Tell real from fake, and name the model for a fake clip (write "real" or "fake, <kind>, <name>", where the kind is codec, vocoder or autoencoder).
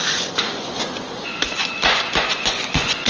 fake, vocoder, Vocos